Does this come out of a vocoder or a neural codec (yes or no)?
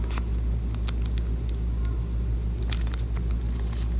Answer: no